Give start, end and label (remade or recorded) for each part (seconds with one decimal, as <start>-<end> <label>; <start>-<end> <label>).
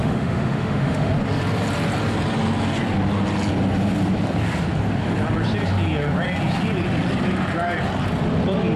0.0-1.1 remade; 1.1-8.8 recorded